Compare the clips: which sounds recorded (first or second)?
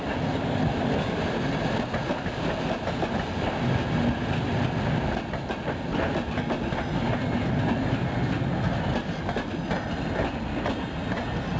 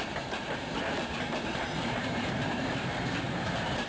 first